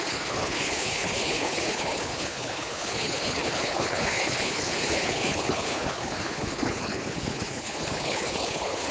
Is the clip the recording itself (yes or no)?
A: no